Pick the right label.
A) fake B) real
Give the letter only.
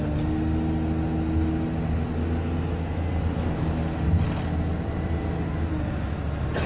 B